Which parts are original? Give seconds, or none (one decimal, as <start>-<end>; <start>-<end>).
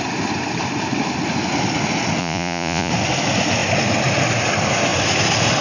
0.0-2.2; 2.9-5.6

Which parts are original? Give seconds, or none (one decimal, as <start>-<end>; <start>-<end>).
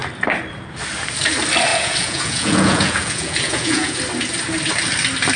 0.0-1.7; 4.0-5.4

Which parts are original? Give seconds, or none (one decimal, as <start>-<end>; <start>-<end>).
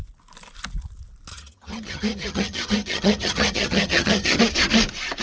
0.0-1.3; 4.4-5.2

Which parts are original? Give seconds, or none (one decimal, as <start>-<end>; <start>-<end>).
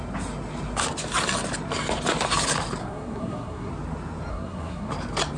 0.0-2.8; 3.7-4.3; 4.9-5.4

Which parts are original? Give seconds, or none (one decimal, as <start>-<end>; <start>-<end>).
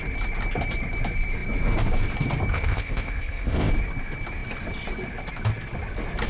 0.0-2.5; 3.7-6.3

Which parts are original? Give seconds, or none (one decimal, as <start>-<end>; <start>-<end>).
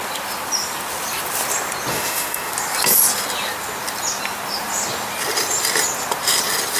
0.0-1.9; 2.5-6.8